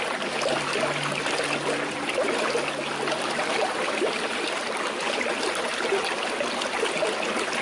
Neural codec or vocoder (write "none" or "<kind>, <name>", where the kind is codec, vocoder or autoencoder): none